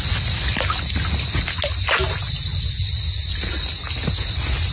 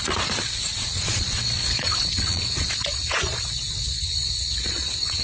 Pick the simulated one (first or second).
second